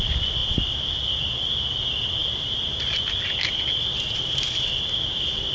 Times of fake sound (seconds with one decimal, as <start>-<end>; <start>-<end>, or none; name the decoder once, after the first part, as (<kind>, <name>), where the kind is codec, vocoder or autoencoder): none